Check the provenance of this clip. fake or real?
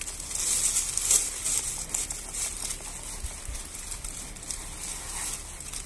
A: real